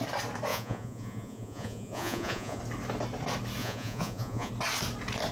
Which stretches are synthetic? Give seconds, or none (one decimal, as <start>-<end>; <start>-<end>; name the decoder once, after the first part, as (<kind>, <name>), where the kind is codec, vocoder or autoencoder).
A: 0.5-2.6 (vocoder, Vocos); 3.6-4.5